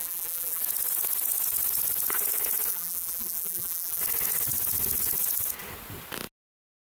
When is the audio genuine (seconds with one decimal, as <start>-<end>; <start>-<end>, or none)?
0.6-2.7; 4.0-6.9